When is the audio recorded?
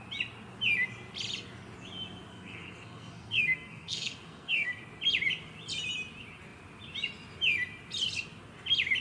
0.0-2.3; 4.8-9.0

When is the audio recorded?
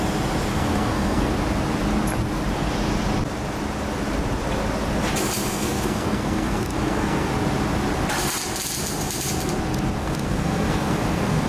0.0-0.5; 1.3-5.5; 7.3-10.0